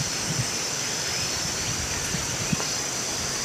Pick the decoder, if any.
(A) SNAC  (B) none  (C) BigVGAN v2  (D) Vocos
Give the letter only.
B